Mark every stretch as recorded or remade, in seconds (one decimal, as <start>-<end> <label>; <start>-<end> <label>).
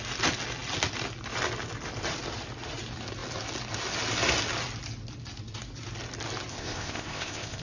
0.0-6.5 recorded; 6.5-7.6 remade